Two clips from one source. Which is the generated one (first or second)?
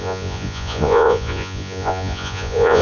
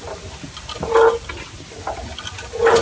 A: first